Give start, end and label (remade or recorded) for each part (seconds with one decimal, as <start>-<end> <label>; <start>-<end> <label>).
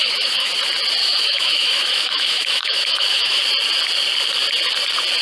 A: 0.0-0.5 remade; 0.5-1.0 recorded; 1.0-3.4 remade; 3.4-5.2 recorded